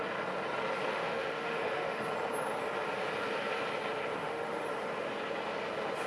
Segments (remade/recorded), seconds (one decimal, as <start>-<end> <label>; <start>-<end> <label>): 0.0-0.9 recorded; 0.9-2.1 remade; 2.1-4.2 recorded; 4.2-4.7 remade; 4.7-6.1 recorded